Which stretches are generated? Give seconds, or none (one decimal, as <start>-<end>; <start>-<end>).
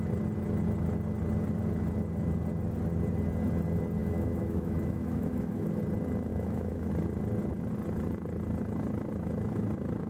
4.0-5.8; 6.3-6.9